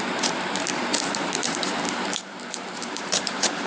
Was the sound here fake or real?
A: fake